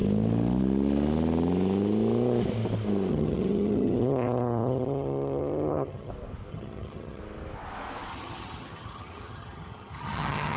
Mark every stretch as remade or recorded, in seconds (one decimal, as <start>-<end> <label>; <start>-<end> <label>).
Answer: 0.0-3.1 recorded; 3.1-6.1 remade; 6.1-6.5 recorded; 6.5-7.2 remade; 7.2-8.1 recorded; 8.1-10.6 remade